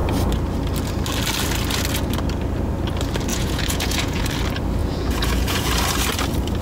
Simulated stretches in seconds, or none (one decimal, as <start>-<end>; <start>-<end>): 3.3-4.3; 4.8-5.7